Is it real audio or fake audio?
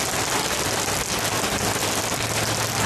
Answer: real